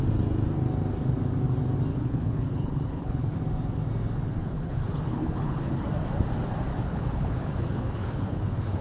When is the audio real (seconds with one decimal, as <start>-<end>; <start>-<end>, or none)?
0.0-1.9; 3.4-4.4; 5.8-6.7